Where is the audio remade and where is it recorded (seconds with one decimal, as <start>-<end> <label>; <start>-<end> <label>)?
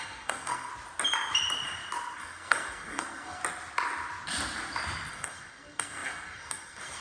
0.0-0.7 remade; 0.7-2.2 recorded; 2.2-3.4 remade; 3.4-5.1 recorded; 5.1-7.0 remade